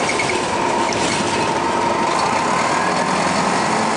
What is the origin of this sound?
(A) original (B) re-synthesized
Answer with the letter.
A